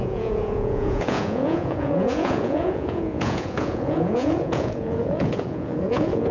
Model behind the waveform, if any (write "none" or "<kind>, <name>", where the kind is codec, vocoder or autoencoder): vocoder, Vocos